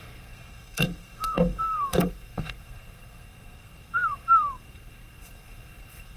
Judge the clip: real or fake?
fake